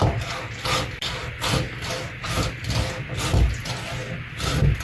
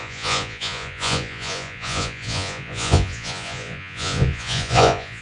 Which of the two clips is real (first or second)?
first